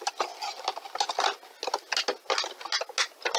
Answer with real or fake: real